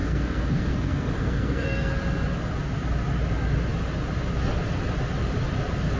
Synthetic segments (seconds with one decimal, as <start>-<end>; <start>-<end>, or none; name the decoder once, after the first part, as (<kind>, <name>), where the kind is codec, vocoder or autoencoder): 0.0-1.9 (codec, SNAC)